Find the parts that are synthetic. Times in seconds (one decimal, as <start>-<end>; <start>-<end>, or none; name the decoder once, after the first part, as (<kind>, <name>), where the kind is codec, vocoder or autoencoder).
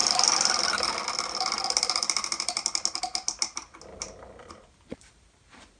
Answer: 4.4-5.1 (vocoder, BigVGAN v2)